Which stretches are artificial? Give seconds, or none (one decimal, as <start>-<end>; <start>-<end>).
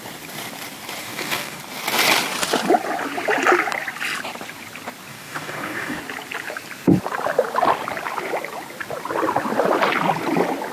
1.0-1.6; 5.1-6.0